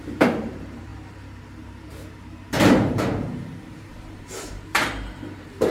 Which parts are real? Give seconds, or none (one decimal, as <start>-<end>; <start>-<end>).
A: none